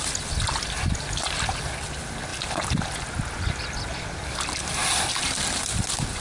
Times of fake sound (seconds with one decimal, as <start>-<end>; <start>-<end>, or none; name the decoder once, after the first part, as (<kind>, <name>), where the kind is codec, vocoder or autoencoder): none